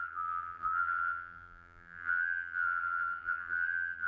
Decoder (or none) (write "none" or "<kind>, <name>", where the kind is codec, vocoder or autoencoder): vocoder, BigVGAN v2